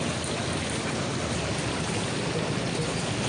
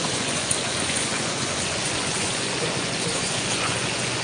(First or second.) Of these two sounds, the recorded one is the first